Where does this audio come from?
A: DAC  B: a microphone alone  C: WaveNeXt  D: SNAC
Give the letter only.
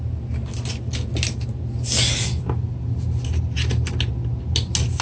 B